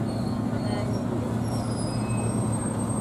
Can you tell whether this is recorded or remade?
recorded